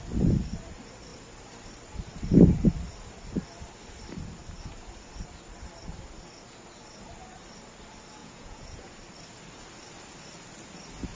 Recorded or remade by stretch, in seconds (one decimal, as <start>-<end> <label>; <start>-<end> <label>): 0.0-8.2 recorded; 8.2-8.9 remade; 8.9-11.2 recorded

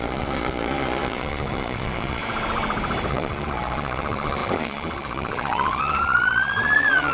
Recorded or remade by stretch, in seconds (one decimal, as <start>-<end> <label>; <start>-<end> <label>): 0.0-2.2 remade; 2.2-3.1 recorded; 3.1-7.1 remade

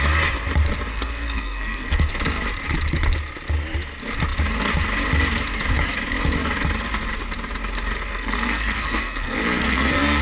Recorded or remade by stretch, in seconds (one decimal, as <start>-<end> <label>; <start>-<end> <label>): 0.0-0.9 recorded; 0.9-2.1 remade; 2.1-8.1 recorded; 8.1-10.2 remade

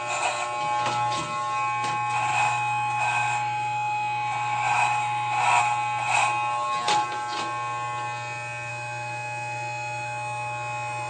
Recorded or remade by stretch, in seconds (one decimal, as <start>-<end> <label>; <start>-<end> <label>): 0.0-2.3 recorded; 2.3-5.6 remade; 5.6-8.7 recorded; 8.7-11.1 remade

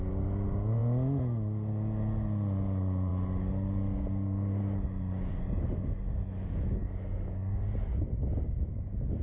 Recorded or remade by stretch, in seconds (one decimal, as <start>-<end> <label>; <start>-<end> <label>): 0.0-9.2 recorded

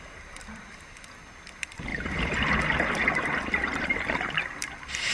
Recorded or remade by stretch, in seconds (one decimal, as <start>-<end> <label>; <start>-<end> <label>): 0.0-5.1 recorded

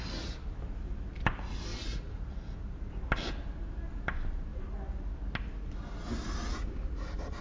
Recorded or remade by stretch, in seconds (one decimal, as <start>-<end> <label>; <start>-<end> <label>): 0.0-1.7 recorded; 1.7-2.2 remade; 2.2-7.4 recorded